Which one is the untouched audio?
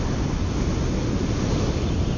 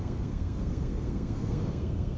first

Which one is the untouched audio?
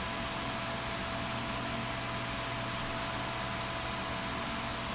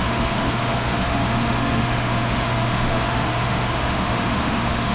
first